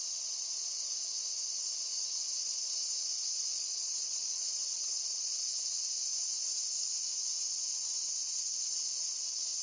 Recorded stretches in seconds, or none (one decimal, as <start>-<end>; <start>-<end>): 0.0-1.7; 5.4-8.2; 9.2-9.6

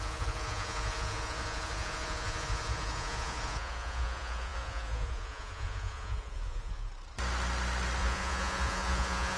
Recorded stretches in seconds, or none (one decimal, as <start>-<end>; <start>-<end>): 6.9-8.0

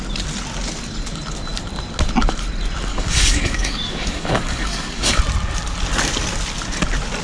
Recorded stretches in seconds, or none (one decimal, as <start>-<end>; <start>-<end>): 0.0-2.9; 5.2-7.2

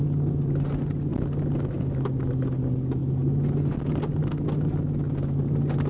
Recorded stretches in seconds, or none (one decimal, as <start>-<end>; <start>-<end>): 0.0-5.9